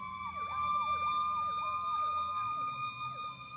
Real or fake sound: real